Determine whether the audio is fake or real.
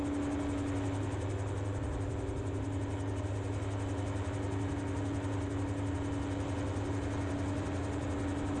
real